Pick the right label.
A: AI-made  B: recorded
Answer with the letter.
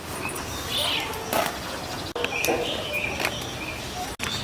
B